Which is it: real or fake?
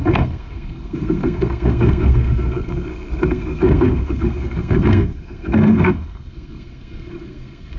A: fake